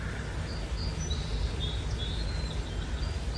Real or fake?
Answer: real